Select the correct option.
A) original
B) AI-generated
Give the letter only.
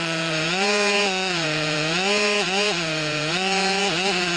B